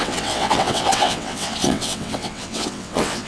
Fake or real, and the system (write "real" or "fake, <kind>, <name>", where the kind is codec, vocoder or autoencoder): fake, vocoder, WaveNeXt